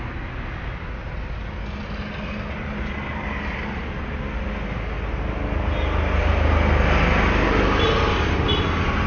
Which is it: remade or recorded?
recorded